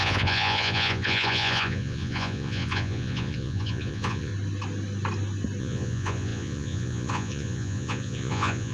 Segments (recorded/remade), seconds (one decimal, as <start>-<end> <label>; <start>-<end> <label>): 0.0-4.3 remade; 4.3-5.6 recorded; 5.6-8.7 remade